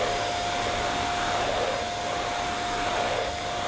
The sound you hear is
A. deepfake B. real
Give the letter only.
B